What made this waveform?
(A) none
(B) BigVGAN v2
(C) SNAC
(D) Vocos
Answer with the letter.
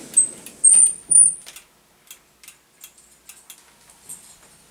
A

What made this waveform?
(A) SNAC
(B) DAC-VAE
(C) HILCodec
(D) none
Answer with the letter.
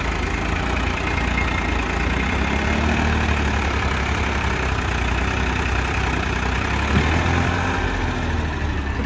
D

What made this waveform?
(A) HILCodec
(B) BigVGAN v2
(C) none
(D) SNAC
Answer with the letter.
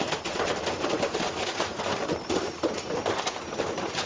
B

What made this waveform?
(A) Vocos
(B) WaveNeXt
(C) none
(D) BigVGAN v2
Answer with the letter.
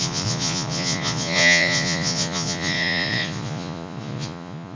A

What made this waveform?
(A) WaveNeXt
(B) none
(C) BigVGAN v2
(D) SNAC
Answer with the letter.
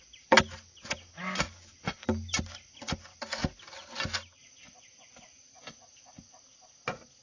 B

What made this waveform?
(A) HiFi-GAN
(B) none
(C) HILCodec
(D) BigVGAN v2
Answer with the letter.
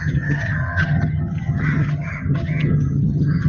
A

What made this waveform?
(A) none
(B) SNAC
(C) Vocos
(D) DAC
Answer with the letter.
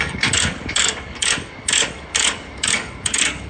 D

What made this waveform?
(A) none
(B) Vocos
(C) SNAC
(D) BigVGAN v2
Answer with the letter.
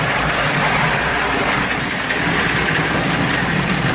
D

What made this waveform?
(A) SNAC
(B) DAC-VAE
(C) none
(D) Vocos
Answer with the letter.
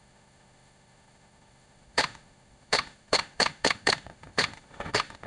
B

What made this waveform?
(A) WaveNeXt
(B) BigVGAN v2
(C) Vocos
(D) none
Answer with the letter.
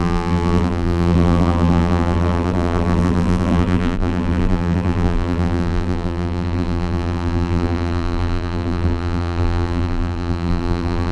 B